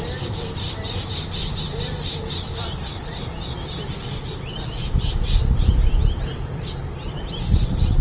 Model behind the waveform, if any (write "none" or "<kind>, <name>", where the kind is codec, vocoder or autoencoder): vocoder, BigVGAN v2